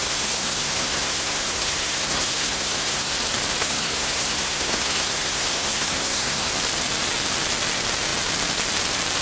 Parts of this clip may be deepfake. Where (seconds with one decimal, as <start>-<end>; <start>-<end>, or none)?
0.0-3.1; 3.6-6.5